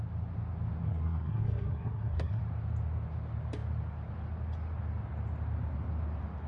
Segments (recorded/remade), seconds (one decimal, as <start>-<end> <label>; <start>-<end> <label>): 0.0-0.8 recorded; 0.8-2.4 remade; 2.4-6.5 recorded